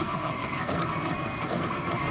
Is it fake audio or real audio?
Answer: fake